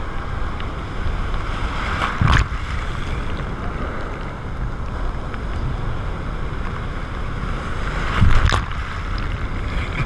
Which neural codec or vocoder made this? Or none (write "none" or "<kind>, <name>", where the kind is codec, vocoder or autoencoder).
none